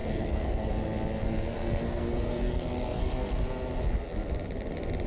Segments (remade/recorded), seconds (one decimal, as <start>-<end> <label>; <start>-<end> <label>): 0.0-0.7 remade; 0.7-1.2 recorded; 1.2-3.4 remade; 3.4-5.1 recorded